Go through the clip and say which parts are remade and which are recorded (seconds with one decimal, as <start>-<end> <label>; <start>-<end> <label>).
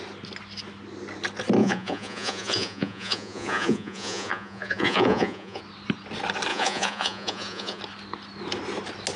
0.0-1.6 recorded; 1.6-5.6 remade; 5.6-6.5 recorded; 6.5-7.8 remade; 7.8-9.2 recorded